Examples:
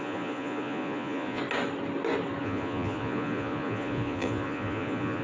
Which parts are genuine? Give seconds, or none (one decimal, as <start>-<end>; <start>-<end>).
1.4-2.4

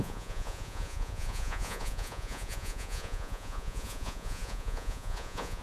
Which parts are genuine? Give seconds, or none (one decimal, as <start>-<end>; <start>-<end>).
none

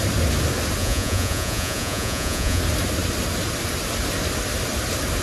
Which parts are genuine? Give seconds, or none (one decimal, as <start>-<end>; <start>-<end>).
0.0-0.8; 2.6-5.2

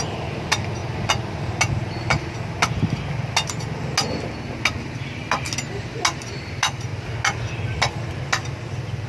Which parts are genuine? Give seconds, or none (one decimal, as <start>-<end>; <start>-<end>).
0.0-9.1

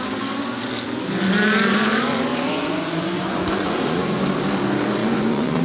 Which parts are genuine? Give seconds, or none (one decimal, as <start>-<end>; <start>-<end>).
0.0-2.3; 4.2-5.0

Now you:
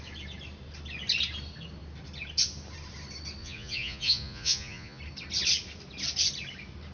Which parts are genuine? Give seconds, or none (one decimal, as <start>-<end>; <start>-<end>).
0.0-3.4; 5.0-6.9